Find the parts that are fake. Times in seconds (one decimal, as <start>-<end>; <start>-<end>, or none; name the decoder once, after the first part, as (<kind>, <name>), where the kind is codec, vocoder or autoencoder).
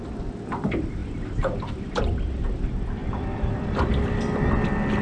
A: 1.0-1.9 (vocoder, BigVGAN v2); 3.0-3.8